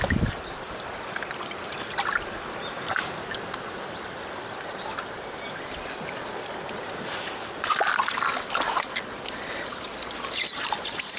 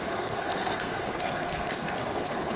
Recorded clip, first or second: first